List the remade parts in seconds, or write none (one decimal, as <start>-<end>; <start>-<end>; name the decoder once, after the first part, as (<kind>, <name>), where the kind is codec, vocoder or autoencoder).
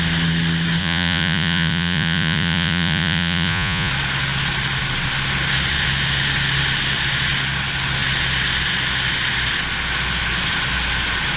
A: 0.8-3.9 (vocoder, Vocos)